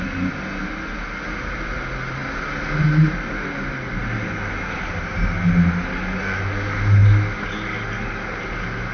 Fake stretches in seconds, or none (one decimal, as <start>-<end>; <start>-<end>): none